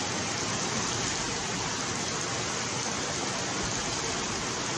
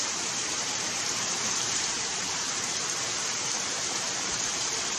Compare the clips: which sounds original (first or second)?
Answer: first